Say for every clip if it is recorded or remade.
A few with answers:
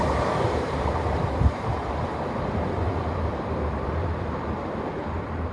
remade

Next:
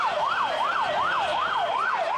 remade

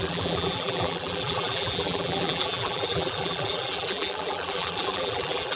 remade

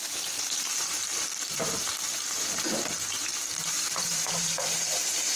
remade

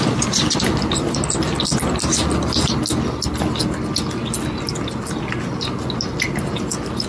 recorded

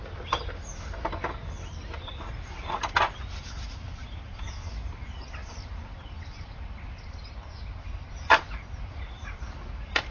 remade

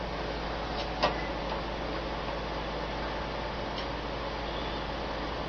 recorded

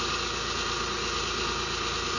recorded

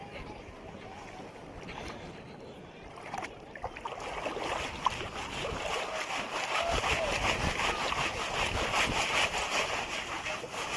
recorded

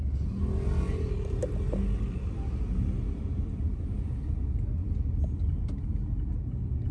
recorded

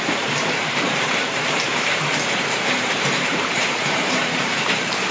remade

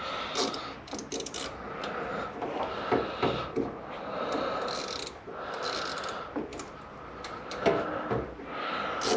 recorded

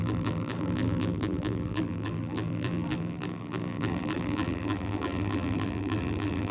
remade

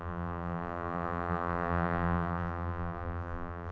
remade